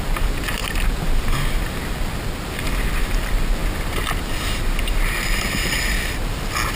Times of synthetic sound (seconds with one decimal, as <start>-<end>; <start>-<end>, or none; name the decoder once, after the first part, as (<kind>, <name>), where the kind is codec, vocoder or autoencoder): none